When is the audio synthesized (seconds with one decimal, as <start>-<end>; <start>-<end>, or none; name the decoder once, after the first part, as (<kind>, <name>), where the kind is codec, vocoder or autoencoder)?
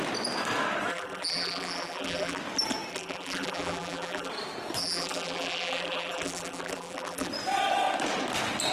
0.9-2.4 (vocoder, BigVGAN v2); 2.9-4.3; 4.8-7.3